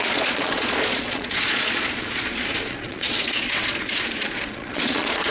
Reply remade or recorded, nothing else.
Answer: remade